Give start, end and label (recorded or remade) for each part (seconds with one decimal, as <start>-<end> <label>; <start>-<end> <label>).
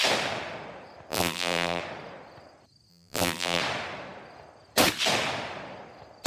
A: 0.0-1.1 recorded; 1.1-1.8 remade; 1.8-2.9 recorded; 2.9-3.6 remade; 3.6-6.3 recorded